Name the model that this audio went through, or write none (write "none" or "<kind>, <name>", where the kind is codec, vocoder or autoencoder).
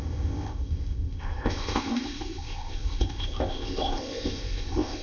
codec, ZipCodec